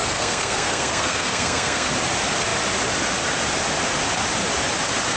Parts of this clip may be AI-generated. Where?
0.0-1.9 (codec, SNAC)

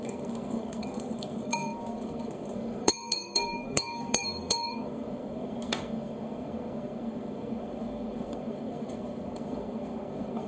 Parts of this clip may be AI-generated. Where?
0.0-10.5 (codec, SNAC)

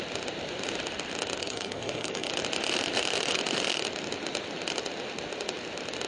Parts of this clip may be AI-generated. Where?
1.4-2.3 (codec, SNAC)